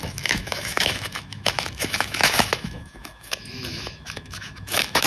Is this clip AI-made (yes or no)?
yes